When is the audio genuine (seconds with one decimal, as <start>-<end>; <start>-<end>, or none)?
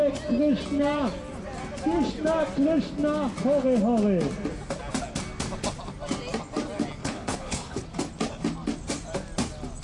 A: 0.0-7.0; 7.8-9.8